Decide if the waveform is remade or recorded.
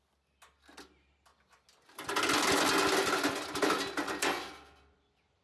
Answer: recorded